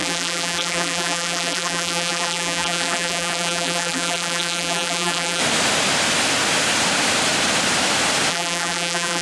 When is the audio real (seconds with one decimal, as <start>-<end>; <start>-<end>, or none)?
5.4-8.3